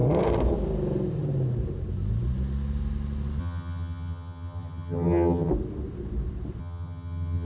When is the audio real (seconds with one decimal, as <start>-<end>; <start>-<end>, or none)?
0.0-3.4; 5.5-6.6